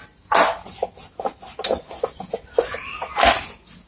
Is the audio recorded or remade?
recorded